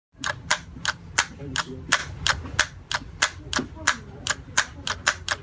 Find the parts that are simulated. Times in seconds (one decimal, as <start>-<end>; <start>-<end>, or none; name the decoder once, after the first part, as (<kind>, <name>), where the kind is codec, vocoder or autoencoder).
none